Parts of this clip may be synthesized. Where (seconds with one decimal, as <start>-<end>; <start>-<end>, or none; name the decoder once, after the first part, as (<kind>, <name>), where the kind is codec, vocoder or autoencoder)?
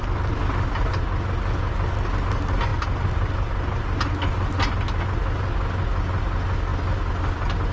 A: none